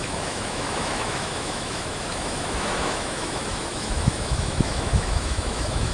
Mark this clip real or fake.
fake